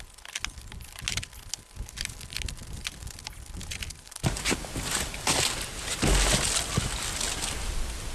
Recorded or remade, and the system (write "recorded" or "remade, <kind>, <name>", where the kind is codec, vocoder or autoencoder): recorded